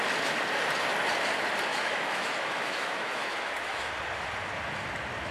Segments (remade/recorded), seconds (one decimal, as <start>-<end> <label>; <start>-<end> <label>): 0.0-1.7 recorded; 1.7-3.9 remade; 3.9-5.3 recorded